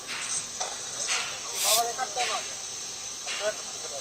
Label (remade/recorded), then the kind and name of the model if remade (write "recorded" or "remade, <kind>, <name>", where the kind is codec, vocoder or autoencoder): recorded